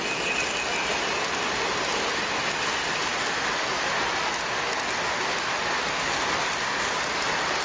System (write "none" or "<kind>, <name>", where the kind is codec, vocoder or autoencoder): none